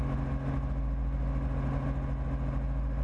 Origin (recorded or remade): recorded